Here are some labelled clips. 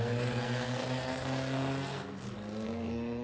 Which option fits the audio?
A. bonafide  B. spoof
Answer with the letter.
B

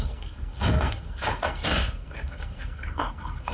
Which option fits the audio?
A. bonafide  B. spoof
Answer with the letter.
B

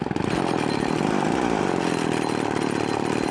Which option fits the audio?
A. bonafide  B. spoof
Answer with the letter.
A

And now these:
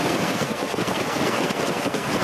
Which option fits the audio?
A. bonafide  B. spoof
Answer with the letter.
B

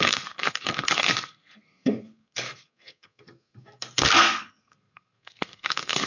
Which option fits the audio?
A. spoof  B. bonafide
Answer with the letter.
A